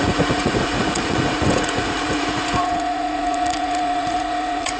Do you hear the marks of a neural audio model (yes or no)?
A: yes